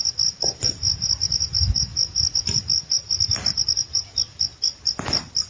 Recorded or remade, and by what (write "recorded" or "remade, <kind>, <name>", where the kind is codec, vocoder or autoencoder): remade, vocoder, BigVGAN v2